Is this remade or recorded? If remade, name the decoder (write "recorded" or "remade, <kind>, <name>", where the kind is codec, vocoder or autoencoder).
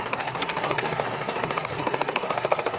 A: remade, codec, SNAC